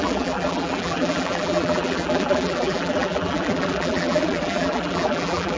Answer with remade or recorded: remade